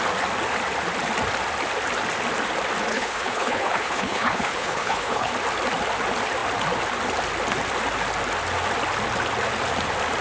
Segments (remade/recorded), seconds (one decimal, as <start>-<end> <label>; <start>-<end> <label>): 0.0-2.9 recorded; 2.9-5.3 remade; 5.3-10.2 recorded